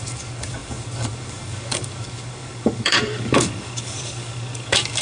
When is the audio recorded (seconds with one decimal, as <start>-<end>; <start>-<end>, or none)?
none